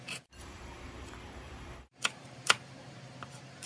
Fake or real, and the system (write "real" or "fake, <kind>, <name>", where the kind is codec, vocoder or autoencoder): fake, vocoder, BigVGAN v2